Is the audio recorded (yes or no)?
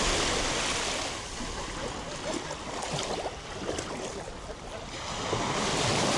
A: yes